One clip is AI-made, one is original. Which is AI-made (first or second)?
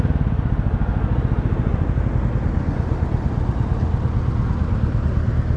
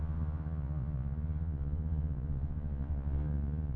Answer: second